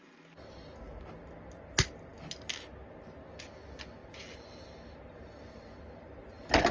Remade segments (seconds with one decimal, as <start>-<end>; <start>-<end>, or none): none